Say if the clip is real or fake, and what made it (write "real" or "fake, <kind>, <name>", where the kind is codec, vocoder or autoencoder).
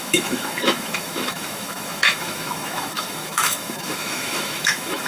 fake, autoencoder, DAC-VAE